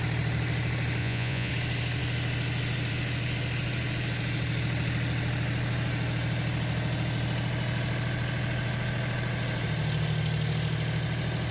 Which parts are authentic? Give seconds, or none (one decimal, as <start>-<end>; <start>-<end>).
0.0-1.0; 1.5-11.5